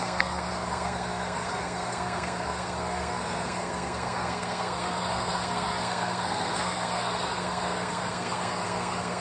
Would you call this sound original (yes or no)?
no